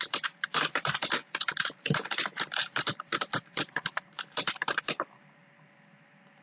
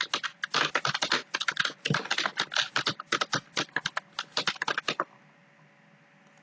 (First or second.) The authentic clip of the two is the second